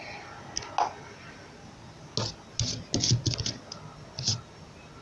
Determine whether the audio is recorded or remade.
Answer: recorded